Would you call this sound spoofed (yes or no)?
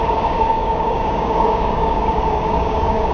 yes